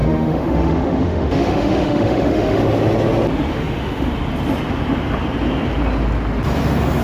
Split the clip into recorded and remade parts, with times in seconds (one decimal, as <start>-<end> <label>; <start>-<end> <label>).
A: 0.0-2.6 remade; 2.6-3.5 recorded; 3.5-4.1 remade; 4.1-7.0 recorded